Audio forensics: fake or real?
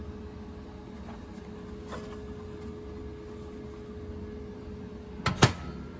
real